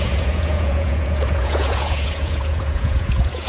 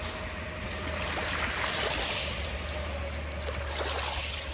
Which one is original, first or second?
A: second